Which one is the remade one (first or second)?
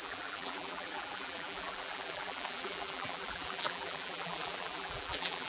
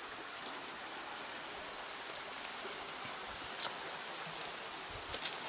first